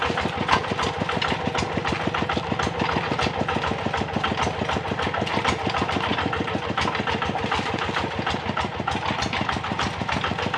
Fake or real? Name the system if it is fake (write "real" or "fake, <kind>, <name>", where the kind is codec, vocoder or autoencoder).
real